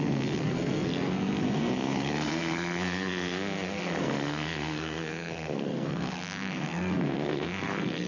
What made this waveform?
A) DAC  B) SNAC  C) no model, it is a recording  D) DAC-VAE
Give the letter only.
B